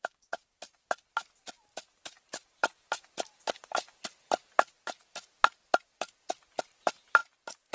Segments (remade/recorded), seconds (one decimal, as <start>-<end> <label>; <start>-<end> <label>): 0.0-7.7 recorded